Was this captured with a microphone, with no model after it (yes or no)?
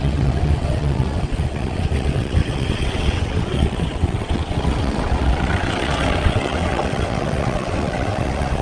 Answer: no